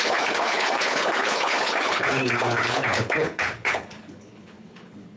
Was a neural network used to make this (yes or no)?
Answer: yes